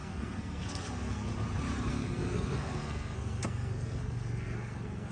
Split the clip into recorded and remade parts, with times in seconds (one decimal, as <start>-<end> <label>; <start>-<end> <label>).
0.0-1.3 remade; 1.3-1.9 recorded; 1.9-5.1 remade